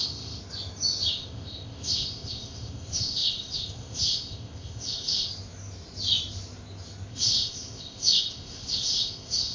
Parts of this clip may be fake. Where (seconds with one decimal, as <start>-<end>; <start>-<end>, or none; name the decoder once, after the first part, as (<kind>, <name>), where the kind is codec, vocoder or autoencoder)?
0.0-0.4 (codec, ZipCodec); 1.1-5.3; 7.1-9.5